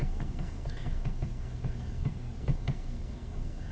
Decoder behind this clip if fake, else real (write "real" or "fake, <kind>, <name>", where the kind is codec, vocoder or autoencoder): fake, codec, SNAC